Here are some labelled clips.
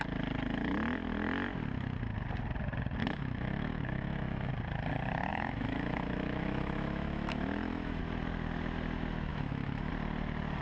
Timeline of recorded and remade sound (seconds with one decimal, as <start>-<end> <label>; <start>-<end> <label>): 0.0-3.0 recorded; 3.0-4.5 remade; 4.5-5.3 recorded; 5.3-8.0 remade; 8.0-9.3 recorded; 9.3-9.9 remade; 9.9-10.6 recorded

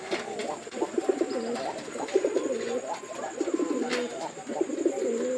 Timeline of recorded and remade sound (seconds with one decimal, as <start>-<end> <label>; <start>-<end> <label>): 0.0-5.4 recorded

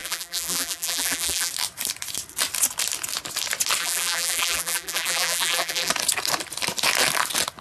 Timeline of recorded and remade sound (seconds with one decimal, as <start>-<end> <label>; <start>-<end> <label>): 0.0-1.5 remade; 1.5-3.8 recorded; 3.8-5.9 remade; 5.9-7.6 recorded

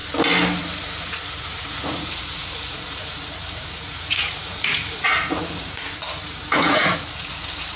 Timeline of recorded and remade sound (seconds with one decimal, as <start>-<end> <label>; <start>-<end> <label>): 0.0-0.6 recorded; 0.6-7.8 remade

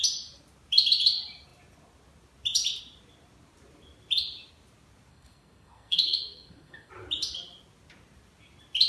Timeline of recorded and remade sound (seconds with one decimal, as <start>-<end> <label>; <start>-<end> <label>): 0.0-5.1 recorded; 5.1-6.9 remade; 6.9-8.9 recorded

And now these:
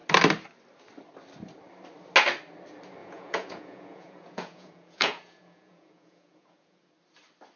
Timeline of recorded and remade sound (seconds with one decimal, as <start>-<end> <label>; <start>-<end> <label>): 0.0-3.0 recorded; 3.0-6.9 remade; 6.9-7.6 recorded